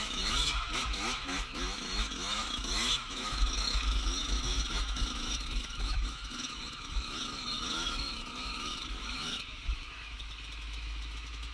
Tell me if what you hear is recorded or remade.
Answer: remade